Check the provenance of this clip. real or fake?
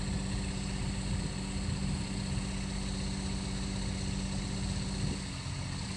real